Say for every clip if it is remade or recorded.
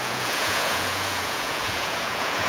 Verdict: remade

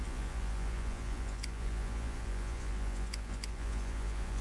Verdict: remade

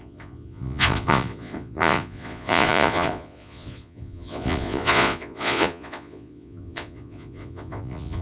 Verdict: remade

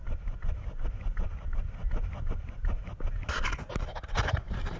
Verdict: recorded